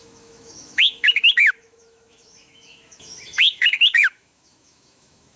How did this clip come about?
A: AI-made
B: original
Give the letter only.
A